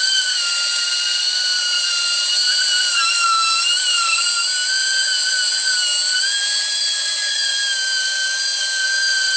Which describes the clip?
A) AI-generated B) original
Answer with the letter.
B